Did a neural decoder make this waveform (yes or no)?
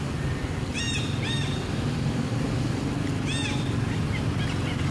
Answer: no